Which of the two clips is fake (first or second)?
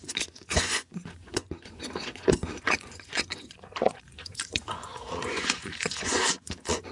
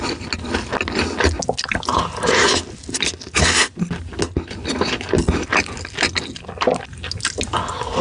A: first